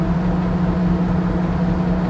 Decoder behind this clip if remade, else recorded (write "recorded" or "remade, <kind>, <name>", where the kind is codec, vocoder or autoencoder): recorded